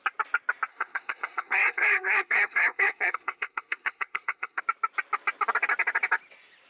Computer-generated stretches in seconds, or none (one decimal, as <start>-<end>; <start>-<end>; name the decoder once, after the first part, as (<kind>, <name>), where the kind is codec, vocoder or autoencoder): 0.7-4.6 (codec, SNAC)